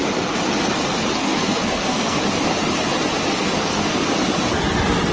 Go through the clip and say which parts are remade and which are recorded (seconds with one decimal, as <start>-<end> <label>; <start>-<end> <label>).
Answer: 0.0-1.2 recorded; 1.2-2.2 remade; 2.2-3.3 recorded; 3.3-4.0 remade; 4.0-5.1 recorded